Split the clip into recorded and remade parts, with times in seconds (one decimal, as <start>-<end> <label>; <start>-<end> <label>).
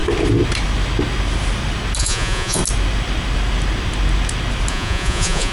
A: 0.0-2.0 recorded; 2.0-2.6 remade; 2.6-4.7 recorded; 4.7-5.5 remade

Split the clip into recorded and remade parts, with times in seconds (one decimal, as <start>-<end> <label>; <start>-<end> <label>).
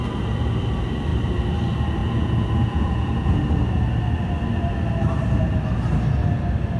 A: 0.0-2.0 recorded; 2.0-3.4 remade; 3.4-6.8 recorded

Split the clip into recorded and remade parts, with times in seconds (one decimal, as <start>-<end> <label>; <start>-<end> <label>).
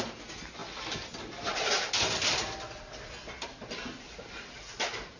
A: 0.0-5.2 recorded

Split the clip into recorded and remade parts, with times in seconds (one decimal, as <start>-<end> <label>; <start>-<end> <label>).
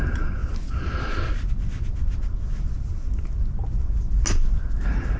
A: 0.0-5.2 recorded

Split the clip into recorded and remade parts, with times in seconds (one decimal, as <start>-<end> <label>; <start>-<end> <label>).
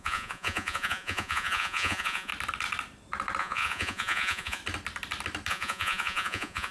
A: 0.0-2.3 remade; 2.3-3.4 recorded; 3.4-4.6 remade; 4.6-5.5 recorded; 5.5-6.7 remade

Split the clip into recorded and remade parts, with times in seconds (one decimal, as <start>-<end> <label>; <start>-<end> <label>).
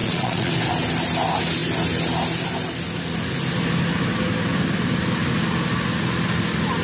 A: 0.0-0.5 remade; 0.5-6.8 recorded